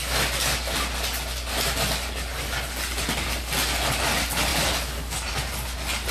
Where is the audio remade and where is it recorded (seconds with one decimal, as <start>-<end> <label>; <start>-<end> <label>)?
0.0-6.1 recorded